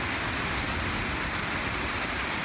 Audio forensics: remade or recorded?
recorded